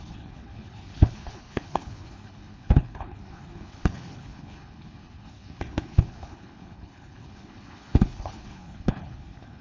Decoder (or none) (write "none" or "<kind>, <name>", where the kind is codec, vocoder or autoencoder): codec, HILCodec